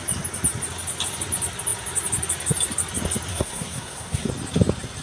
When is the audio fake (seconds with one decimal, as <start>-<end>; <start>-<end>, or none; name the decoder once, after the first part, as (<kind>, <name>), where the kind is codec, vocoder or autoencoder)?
3.3-4.3 (codec, SNAC)